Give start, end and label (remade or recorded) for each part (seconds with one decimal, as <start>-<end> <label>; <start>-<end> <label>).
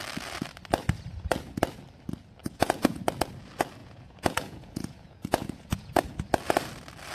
0.0-2.4 recorded; 2.4-3.0 remade; 3.0-3.8 recorded; 3.8-6.0 remade; 6.0-7.1 recorded